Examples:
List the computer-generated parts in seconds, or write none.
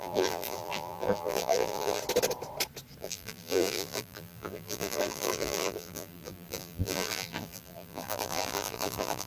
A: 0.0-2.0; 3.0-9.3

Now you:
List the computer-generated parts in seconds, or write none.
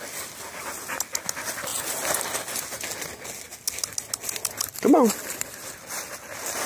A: none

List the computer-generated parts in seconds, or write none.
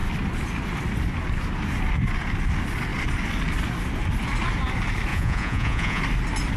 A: 5.1-6.0